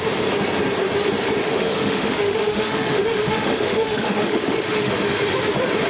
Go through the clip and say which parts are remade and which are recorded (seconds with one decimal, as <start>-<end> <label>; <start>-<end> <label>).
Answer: 0.0-1.4 recorded; 1.4-4.9 remade; 4.9-5.9 recorded